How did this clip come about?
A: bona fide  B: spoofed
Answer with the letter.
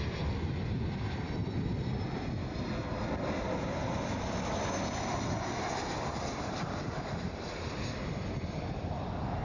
A